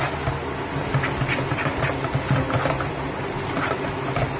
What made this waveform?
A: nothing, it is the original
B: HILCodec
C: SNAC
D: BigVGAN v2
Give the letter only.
A